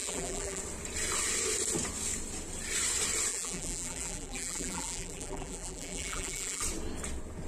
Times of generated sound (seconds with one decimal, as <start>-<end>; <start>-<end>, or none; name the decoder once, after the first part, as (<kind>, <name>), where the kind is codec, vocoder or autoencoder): 0.0-0.6 (vocoder, BigVGAN v2); 3.3-6.6